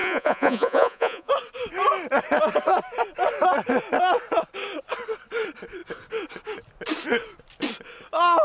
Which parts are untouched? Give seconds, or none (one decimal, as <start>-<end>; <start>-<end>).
1.3-8.4